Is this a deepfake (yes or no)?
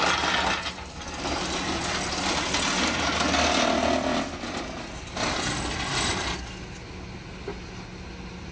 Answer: no